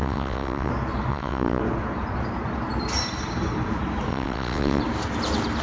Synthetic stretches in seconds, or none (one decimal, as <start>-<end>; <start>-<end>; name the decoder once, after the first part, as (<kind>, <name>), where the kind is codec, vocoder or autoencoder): 0.0-0.7 (vocoder, WaveNeXt); 1.1-1.6; 4.1-4.8